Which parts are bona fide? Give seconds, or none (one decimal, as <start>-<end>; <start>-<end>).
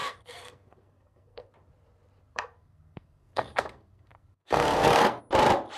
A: 1.5-2.3; 5.2-5.8